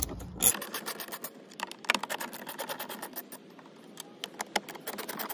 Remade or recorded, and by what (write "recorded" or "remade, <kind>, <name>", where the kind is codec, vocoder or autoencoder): recorded